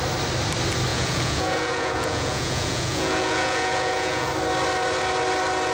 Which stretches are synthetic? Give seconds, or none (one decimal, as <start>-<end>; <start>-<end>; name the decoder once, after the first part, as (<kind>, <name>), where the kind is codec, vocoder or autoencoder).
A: 0.9-4.3 (vocoder, Vocos)